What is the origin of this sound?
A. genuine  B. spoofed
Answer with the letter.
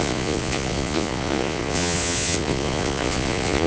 B